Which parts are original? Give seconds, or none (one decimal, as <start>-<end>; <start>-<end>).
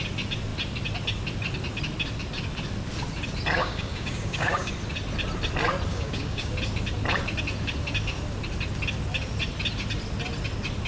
0.0-3.6; 4.7-5.9; 6.5-10.9